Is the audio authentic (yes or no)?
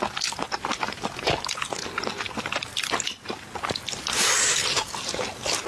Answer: yes